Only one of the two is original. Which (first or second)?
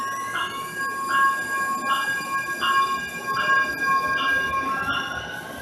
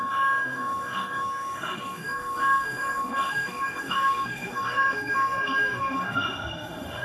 first